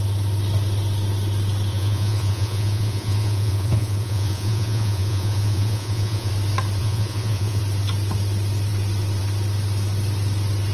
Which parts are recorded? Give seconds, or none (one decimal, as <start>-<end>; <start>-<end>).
0.0-1.7; 6.3-6.8; 7.6-10.7